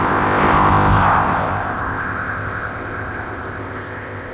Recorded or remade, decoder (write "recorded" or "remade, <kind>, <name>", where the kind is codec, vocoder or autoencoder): remade, codec, ZipCodec